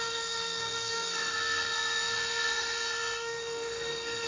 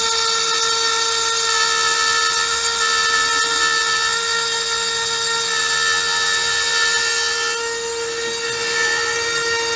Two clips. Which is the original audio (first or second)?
second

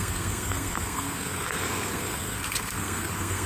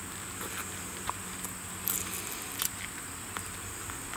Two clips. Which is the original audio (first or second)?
second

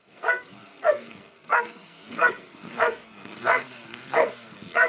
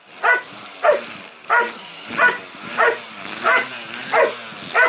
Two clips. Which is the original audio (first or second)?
second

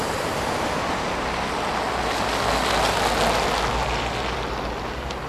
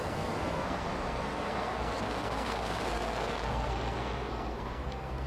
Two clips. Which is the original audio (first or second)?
first